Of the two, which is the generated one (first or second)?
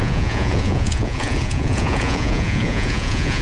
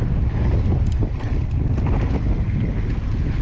first